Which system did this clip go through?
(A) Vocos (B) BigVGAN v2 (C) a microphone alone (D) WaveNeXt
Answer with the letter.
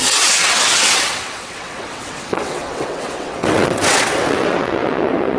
D